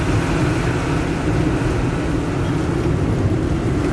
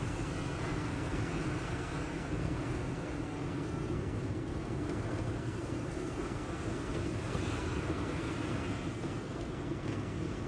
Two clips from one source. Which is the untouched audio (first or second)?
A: first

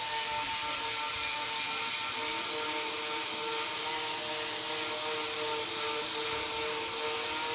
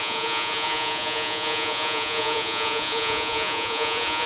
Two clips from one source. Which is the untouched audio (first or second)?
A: first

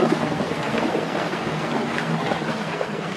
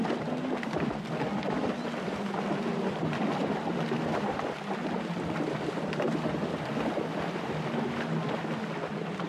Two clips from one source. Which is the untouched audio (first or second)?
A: second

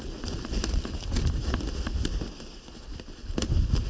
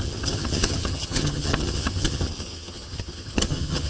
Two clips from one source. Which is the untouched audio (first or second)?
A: first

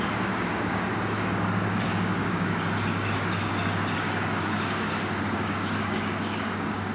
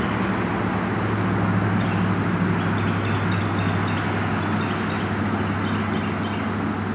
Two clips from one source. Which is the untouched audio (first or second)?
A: second